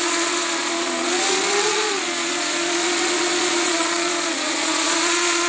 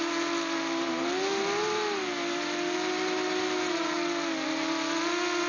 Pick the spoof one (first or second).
first